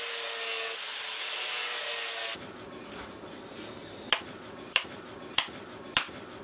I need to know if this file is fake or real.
real